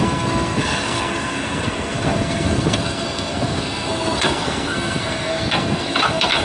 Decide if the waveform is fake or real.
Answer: fake